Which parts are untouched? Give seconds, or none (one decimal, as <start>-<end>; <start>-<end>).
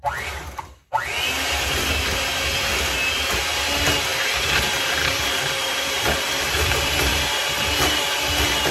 0.0-4.1; 8.1-8.7